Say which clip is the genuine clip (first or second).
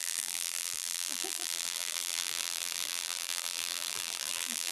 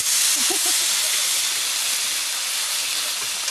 second